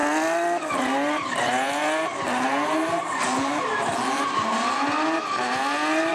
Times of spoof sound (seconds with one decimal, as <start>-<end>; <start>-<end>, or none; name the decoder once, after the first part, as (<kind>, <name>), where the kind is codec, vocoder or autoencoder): none